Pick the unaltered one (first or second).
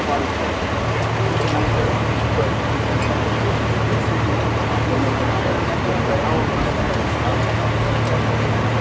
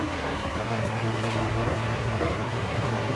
first